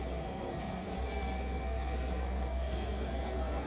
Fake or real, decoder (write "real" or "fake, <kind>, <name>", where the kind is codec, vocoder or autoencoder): fake, codec, SNAC